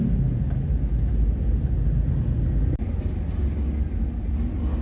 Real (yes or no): yes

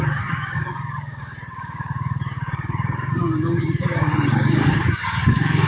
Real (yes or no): no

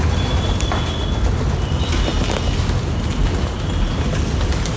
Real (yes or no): yes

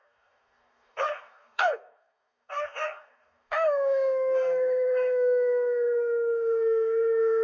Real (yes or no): no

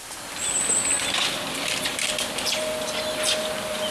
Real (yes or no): yes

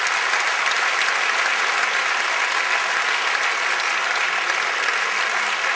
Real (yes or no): yes